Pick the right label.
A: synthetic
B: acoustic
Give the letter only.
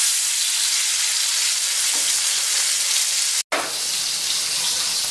B